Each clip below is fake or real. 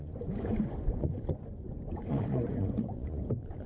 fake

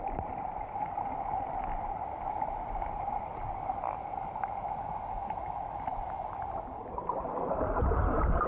real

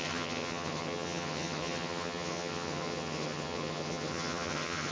fake